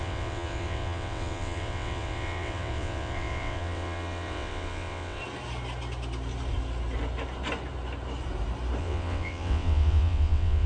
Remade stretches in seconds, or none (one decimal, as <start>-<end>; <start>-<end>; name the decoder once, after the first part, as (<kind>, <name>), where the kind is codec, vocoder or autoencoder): 0.0-5.2 (vocoder, WaveNeXt); 8.8-10.7